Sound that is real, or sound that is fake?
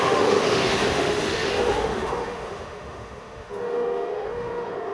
fake